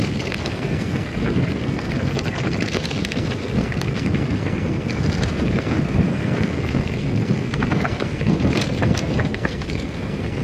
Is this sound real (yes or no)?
no